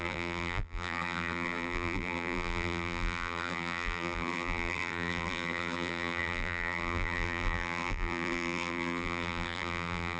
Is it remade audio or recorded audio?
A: remade